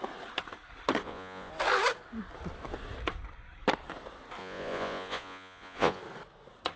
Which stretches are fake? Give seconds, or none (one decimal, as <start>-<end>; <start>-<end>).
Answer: 1.0-1.5; 4.4-6.0